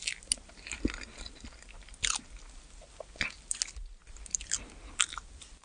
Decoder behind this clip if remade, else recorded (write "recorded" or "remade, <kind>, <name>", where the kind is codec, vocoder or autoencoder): recorded